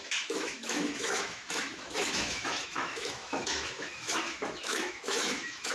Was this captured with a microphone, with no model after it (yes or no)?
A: no